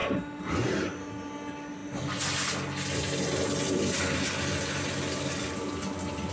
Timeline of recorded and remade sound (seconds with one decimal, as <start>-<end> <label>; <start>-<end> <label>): 0.0-0.6 remade; 0.6-6.3 recorded